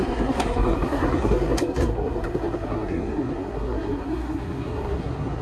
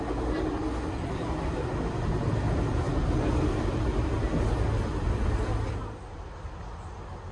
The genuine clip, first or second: second